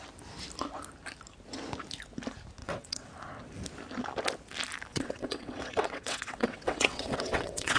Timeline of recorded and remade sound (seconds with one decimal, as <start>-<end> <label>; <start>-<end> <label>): 0.0-2.6 recorded; 2.6-3.1 remade; 3.1-4.9 recorded; 4.9-7.8 remade